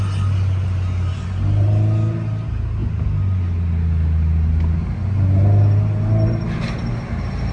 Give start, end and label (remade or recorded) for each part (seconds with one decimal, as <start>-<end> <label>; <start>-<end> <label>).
0.0-7.5 recorded